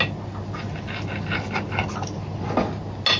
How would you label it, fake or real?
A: real